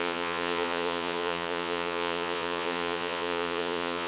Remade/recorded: remade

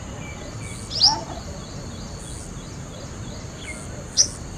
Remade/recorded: recorded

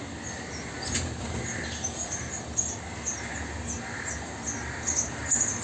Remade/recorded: recorded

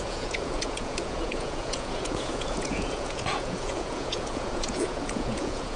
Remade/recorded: remade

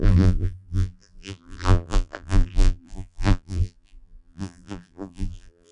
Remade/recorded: remade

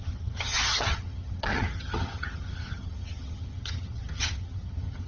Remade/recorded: remade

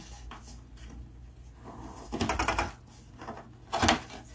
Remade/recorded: recorded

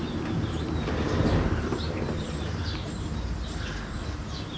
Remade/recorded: remade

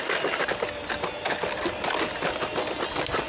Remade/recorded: recorded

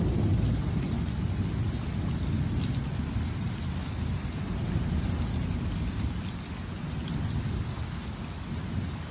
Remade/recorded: recorded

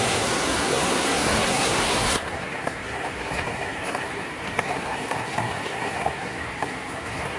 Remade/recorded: remade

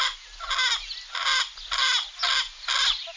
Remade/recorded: recorded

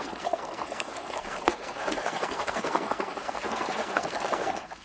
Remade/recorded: remade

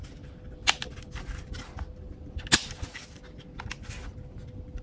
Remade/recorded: recorded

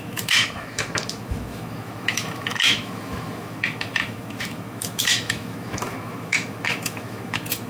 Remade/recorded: remade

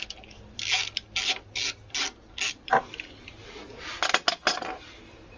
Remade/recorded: recorded